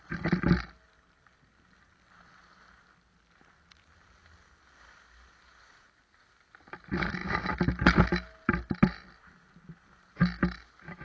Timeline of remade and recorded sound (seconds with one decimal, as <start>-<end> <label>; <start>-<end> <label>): 0.0-11.0 recorded